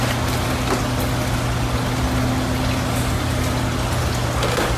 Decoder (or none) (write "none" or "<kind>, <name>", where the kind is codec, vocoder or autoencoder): none